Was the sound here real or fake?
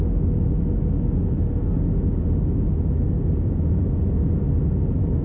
real